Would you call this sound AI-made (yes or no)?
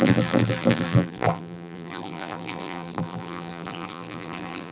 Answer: yes